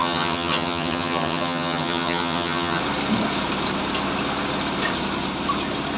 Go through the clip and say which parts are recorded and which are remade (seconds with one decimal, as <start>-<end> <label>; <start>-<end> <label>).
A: 0.0-2.8 remade; 2.8-6.0 recorded